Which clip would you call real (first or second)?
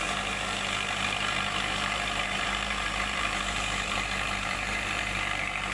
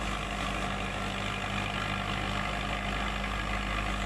second